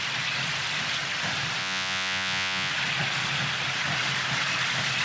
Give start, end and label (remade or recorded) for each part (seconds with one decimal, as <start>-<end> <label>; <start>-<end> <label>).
0.0-1.6 recorded; 1.6-2.7 remade; 2.7-5.0 recorded